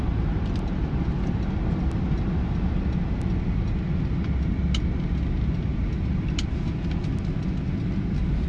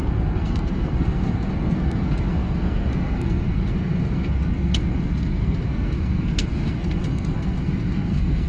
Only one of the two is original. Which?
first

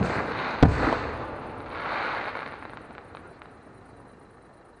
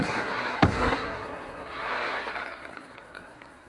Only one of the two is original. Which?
first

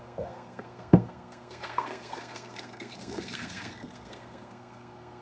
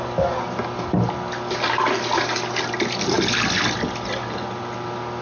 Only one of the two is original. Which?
second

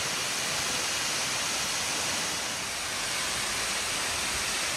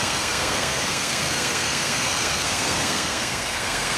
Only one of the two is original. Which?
first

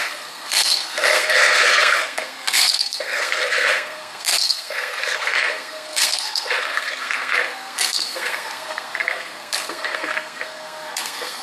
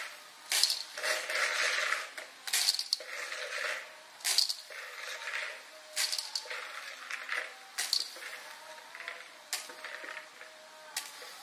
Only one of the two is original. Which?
second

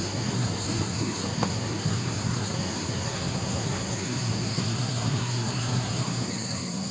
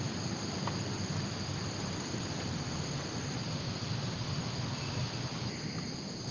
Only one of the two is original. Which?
second